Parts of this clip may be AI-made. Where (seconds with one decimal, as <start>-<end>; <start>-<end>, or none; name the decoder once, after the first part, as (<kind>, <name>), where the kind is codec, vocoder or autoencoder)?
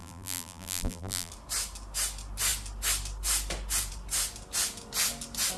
0.0-1.3 (vocoder, BigVGAN v2)